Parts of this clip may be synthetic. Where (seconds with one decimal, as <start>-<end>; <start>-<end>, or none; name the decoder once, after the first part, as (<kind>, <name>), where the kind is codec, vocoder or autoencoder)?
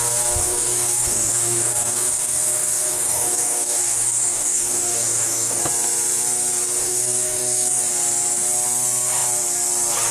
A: 0.4-5.6 (codec, DAC); 6.8-7.8